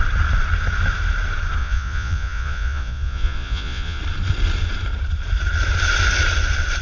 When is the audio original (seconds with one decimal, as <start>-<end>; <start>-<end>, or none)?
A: 0.0-1.6; 4.0-6.8